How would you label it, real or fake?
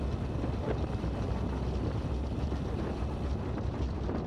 real